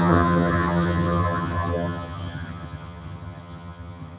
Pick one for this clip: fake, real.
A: fake